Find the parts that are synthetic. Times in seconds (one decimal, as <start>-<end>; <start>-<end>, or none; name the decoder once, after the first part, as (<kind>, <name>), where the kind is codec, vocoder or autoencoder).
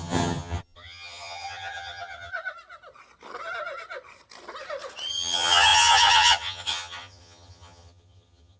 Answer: 0.0-2.3 (vocoder, HiFi-GAN); 5.1-8.6